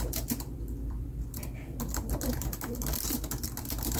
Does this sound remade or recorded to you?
remade